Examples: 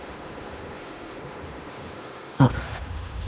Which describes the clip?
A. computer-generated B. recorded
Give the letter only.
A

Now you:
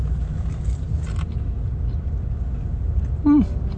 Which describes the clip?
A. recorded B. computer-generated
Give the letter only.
A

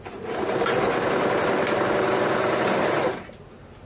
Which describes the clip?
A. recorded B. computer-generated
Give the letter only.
A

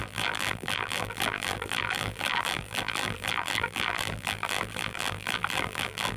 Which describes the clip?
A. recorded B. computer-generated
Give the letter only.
B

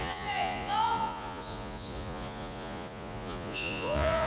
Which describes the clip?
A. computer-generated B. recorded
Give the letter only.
A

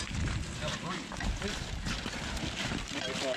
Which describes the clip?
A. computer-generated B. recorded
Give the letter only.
A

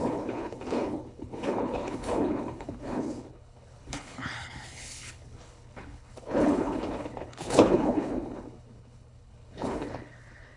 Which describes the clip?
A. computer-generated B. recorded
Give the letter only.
A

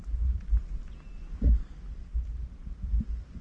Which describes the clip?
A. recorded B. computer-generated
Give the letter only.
A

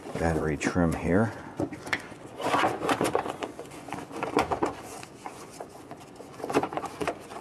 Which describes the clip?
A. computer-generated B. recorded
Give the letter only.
A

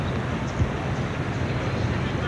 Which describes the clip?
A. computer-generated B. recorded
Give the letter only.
B